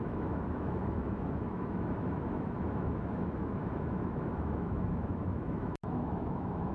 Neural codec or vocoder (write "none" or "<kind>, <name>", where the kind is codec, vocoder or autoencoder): autoencoder, DAC-VAE